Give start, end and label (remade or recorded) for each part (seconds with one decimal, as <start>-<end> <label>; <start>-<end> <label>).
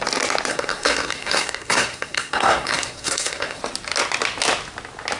0.0-0.5 recorded; 0.5-3.6 remade; 3.6-5.2 recorded